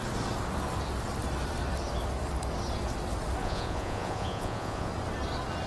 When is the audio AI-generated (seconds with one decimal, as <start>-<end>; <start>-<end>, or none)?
3.4-4.9